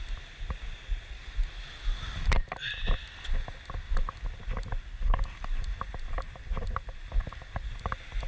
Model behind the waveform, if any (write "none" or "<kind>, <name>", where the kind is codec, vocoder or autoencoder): none